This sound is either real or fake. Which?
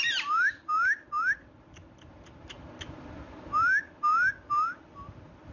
real